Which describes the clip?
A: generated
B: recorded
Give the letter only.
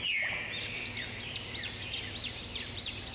B